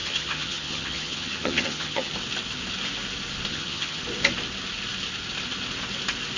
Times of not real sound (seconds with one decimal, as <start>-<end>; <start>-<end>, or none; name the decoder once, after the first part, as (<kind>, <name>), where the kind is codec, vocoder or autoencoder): 0.0-2.1 (vocoder, HiFi-GAN); 3.5-4.0